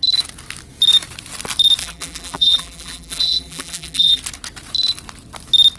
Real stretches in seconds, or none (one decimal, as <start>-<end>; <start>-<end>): 0.0-1.8; 4.2-5.8

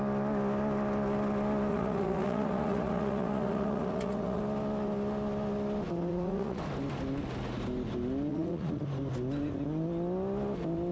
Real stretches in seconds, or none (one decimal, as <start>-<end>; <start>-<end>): 0.0-1.7; 4.4-6.1; 6.6-8.3; 8.8-10.9

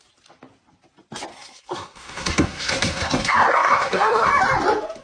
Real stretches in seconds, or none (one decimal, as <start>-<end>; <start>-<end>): 0.0-1.3; 4.3-5.0

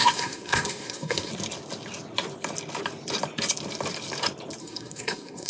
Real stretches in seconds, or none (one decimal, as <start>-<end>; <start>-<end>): 1.3-4.6

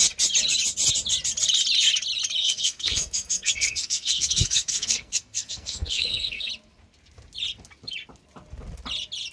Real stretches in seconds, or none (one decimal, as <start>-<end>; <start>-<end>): 0.0-2.4; 6.5-9.3

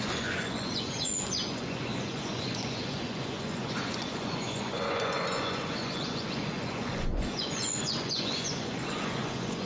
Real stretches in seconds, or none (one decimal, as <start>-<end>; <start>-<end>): none

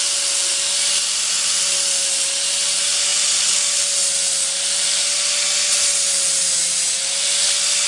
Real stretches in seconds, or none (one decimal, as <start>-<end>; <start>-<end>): 0.0-7.9

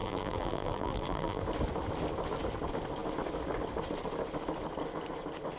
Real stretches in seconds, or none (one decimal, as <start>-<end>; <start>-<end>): 1.4-5.6